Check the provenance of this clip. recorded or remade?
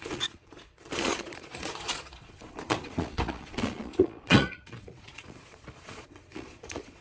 remade